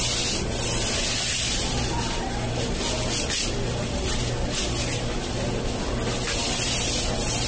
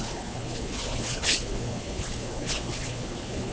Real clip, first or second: first